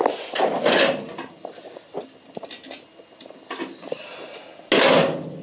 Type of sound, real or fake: real